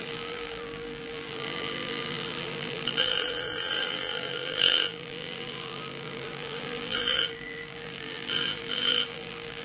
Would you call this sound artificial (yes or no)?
yes